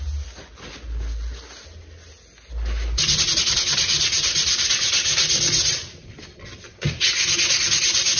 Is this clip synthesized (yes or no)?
no